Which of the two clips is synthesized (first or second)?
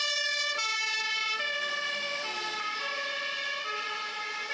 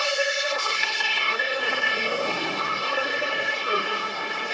second